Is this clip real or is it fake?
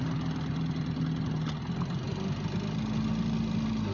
real